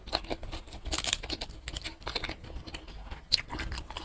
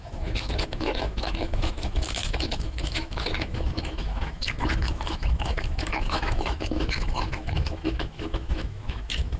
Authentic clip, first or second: first